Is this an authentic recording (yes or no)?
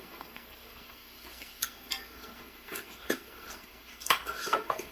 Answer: no